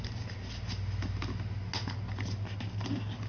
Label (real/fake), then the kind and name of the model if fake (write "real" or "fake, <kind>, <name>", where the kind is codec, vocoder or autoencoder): real